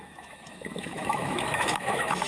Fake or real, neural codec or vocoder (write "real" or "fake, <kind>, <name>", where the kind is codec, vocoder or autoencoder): fake, autoencoder, DAC-VAE